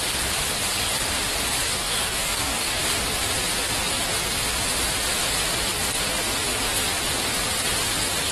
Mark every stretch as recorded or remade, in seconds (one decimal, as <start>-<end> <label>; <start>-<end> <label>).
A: 0.0-1.6 recorded; 1.6-2.8 remade; 2.8-8.3 recorded